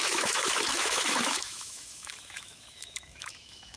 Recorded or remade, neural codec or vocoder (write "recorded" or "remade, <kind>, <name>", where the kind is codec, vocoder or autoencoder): remade, autoencoder, DAC-VAE